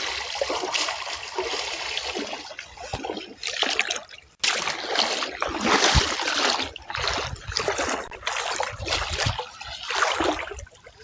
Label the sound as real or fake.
real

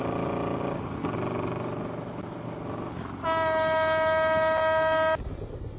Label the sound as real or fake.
real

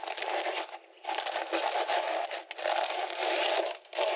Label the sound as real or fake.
real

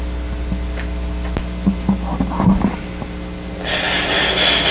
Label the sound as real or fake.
real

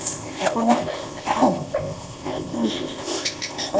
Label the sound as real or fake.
fake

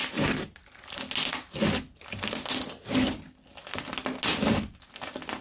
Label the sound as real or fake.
real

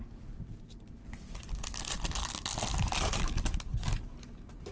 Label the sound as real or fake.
real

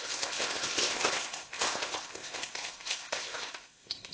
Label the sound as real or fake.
fake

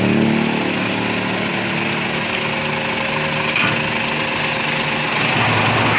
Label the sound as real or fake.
real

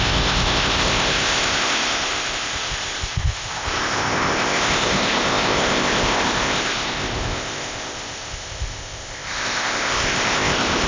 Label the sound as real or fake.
fake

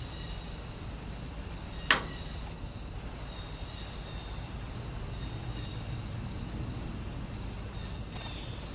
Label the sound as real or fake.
real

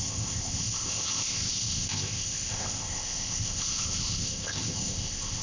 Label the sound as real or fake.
fake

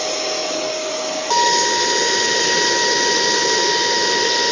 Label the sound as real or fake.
real